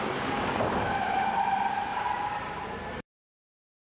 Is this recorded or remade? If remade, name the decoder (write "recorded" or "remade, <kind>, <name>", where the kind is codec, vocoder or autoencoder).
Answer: remade, vocoder, BigVGAN v2